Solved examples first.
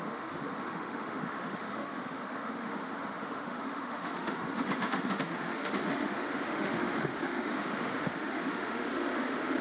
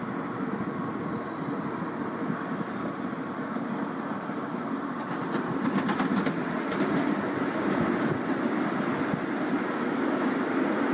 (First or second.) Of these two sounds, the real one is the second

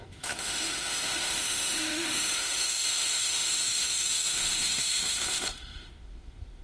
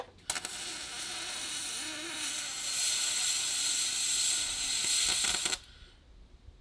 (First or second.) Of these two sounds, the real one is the second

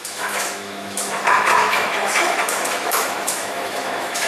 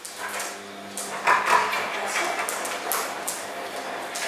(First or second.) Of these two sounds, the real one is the second